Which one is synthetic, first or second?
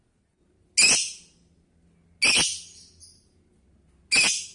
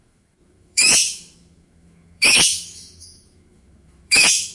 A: second